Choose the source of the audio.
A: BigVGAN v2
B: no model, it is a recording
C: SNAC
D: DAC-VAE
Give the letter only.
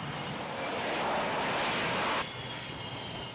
B